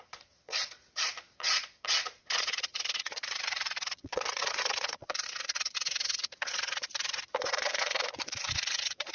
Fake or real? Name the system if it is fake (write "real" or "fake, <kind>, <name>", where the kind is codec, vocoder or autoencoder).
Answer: fake, vocoder, Vocos